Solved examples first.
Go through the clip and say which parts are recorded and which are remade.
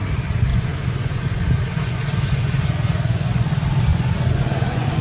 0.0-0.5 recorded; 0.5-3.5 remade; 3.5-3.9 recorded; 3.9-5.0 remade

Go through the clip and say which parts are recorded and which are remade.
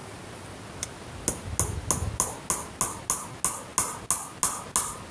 0.0-5.1 recorded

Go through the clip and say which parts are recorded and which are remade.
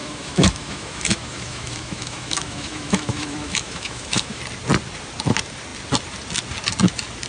0.0-4.4 remade; 4.4-7.3 recorded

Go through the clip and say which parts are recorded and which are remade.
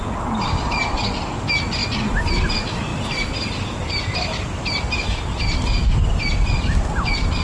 0.0-1.8 recorded; 1.8-2.5 remade; 2.5-5.1 recorded; 5.1-5.9 remade; 5.9-7.4 recorded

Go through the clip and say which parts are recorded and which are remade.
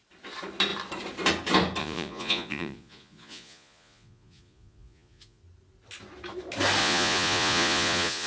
0.0-1.8 recorded; 1.8-5.4 remade; 5.4-6.8 recorded; 6.8-8.3 remade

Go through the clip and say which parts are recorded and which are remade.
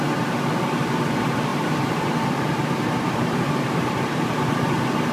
0.0-1.5 recorded; 1.5-4.3 remade; 4.3-5.1 recorded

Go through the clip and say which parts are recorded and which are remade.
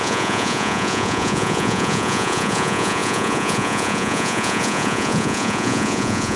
0.0-6.4 remade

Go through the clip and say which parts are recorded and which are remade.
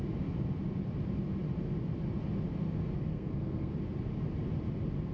0.0-3.1 recorded; 3.1-3.7 remade; 3.7-5.1 recorded